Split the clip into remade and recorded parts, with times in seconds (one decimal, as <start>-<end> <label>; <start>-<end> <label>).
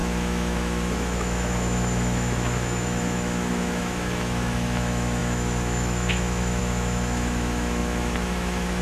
0.0-8.8 remade